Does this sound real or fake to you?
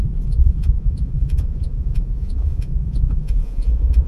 fake